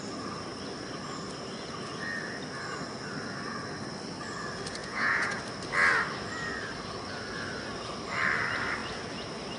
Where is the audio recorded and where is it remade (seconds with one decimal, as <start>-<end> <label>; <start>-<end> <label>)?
0.0-4.8 recorded; 4.8-5.4 remade; 5.4-9.6 recorded